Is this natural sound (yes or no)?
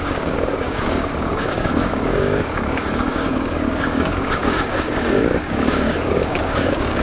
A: no